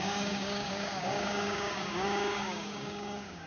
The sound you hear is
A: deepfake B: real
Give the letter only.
A